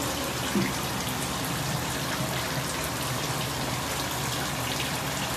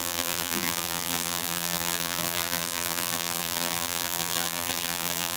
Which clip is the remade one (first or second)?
second